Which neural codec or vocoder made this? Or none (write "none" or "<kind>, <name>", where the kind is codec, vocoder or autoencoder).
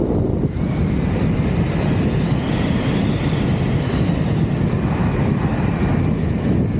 none